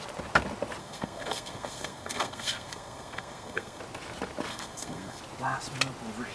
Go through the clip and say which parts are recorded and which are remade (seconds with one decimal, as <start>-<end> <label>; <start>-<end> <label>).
0.0-0.8 recorded; 0.8-3.8 remade; 3.8-4.5 recorded; 4.5-5.2 remade; 5.2-6.3 recorded